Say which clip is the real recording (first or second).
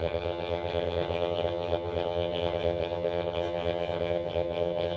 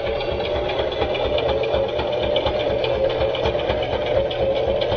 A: second